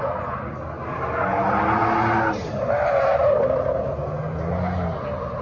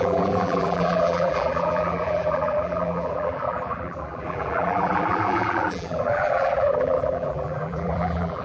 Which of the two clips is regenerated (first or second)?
second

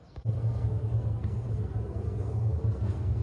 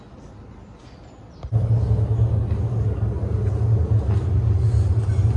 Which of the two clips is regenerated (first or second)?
first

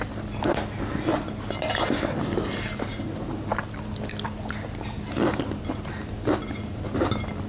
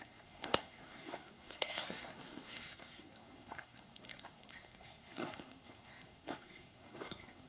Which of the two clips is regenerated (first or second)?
second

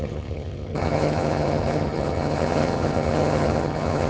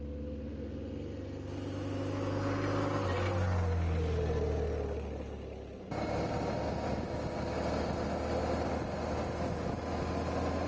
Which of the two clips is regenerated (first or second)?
first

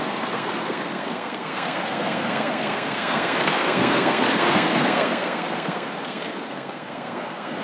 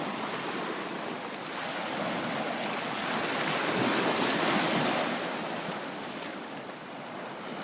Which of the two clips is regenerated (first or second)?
first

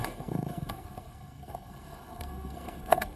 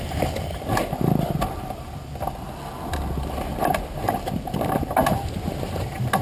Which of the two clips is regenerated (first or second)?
first